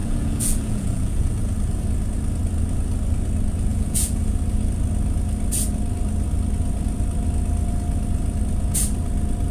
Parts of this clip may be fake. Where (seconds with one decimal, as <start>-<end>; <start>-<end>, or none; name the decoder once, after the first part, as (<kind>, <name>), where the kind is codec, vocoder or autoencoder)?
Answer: 0.0-1.8 (vocoder, Vocos); 3.7-4.4